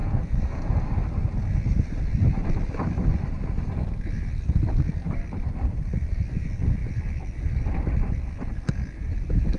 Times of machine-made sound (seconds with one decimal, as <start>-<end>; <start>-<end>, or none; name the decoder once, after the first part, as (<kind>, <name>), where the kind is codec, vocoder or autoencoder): 0.0-0.8 (vocoder, Vocos)

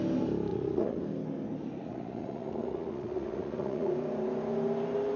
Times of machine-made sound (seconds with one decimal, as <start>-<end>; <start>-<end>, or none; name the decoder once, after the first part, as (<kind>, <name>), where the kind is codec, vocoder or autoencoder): 0.5-1.0 (vocoder, Vocos); 1.8-3.9

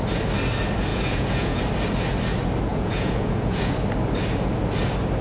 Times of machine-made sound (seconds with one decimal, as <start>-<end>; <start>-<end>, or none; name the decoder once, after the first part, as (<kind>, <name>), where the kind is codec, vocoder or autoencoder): 0.9-1.6 (vocoder, Vocos); 2.7-3.7